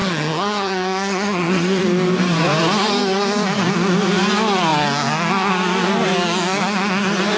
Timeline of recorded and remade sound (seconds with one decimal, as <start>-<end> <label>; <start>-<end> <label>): 0.0-1.8 remade; 1.8-7.4 recorded